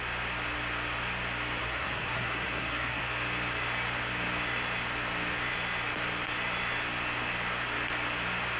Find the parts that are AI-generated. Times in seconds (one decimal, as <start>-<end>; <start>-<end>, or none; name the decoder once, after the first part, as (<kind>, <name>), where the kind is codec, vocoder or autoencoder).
1.6-3.0 (codec, SNAC)